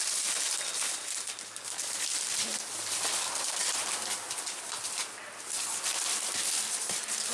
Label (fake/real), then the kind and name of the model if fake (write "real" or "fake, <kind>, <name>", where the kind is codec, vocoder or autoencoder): real